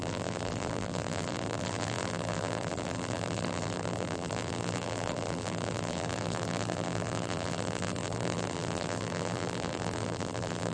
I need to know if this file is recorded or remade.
remade